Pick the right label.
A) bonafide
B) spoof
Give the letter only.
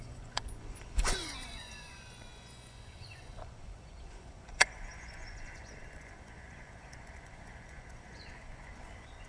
B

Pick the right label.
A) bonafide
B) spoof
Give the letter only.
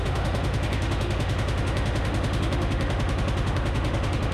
B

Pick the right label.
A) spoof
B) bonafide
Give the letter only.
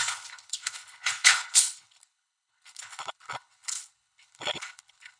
A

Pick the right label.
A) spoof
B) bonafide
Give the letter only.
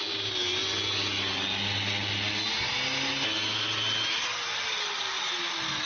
B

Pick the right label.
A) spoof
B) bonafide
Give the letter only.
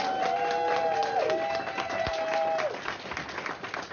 B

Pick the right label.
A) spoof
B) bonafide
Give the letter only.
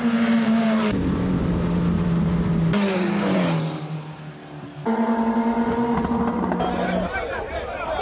A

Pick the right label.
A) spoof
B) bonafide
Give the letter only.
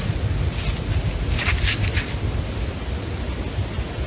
B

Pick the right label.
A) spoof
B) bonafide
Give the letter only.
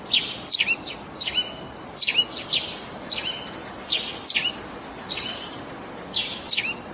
B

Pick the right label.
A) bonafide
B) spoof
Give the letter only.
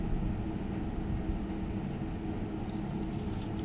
A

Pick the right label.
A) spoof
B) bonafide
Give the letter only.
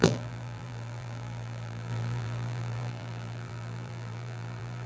A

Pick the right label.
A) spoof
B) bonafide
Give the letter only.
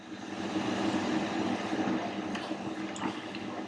B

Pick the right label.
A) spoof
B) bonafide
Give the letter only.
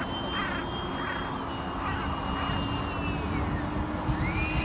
B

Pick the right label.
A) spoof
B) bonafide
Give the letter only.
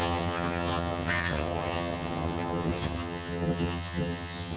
A